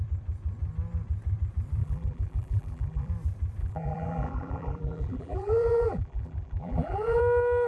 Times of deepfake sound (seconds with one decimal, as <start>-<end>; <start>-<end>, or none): 1.8-3.1; 3.6-7.2